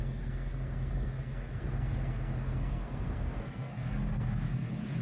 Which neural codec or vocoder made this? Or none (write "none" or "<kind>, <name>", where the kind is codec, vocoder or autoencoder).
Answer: codec, SNAC